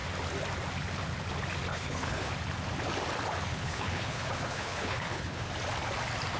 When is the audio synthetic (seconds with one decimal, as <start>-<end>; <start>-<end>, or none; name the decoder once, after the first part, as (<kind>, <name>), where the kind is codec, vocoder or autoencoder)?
1.7-2.3 (codec, HILCodec); 3.5-5.5